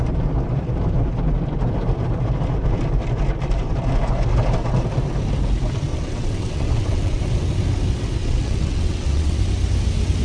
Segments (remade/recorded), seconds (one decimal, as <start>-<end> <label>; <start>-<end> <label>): 0.0-5.9 recorded; 5.9-7.2 remade; 7.2-8.2 recorded; 8.2-9.4 remade; 9.4-10.2 recorded